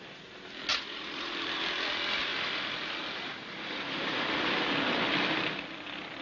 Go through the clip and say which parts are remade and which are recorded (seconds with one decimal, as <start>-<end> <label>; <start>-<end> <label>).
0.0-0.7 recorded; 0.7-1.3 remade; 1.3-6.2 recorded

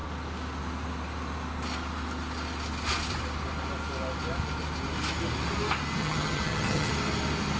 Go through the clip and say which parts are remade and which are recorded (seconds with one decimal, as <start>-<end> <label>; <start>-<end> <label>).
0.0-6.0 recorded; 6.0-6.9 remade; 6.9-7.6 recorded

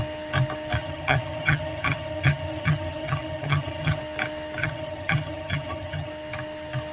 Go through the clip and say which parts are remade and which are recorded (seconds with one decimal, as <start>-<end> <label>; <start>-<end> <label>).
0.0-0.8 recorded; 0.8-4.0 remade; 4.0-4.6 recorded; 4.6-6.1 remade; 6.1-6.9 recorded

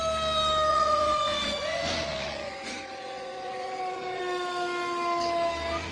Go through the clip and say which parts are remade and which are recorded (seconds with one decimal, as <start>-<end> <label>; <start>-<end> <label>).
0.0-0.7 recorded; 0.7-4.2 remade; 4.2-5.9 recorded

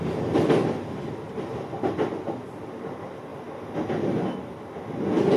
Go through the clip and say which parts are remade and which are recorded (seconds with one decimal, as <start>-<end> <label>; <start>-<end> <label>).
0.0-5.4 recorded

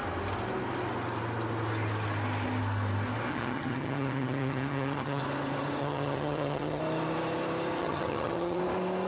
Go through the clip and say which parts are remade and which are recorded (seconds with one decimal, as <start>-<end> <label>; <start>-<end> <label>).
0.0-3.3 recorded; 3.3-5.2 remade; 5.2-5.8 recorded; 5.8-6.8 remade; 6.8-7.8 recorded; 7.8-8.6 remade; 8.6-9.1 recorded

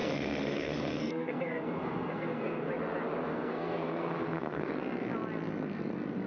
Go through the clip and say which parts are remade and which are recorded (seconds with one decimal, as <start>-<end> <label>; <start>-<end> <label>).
0.0-2.7 remade; 2.7-3.3 recorded; 3.3-4.7 remade; 4.7-6.3 recorded